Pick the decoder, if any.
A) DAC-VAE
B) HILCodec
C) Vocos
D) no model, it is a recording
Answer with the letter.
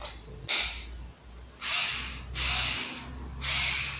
D